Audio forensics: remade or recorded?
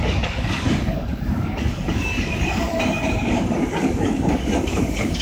remade